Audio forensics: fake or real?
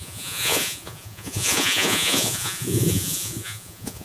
fake